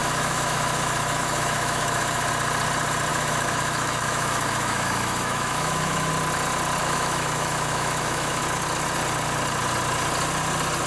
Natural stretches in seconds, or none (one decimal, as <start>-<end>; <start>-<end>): 2.3-3.1; 6.1-6.8; 8.4-10.9